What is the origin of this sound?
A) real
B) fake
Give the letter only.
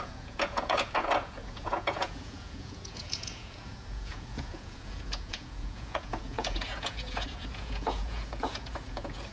B